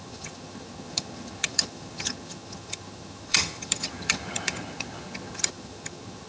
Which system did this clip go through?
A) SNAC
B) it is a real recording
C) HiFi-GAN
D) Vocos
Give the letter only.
C